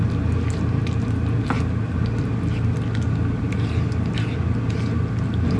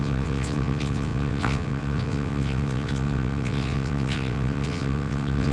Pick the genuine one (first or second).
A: first